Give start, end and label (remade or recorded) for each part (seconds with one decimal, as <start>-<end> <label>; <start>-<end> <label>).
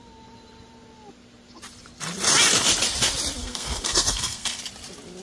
0.0-3.4 recorded; 3.4-4.6 remade; 4.6-5.2 recorded